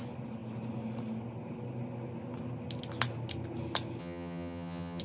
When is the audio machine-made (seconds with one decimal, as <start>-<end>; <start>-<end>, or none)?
4.0-5.0